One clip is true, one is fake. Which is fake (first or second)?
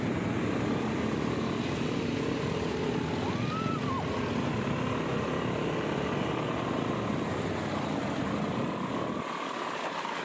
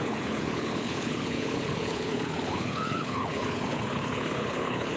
second